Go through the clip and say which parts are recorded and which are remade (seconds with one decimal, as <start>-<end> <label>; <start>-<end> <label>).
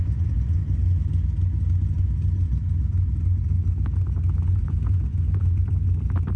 0.0-0.6 remade; 0.6-4.4 recorded; 4.4-5.6 remade; 5.6-6.4 recorded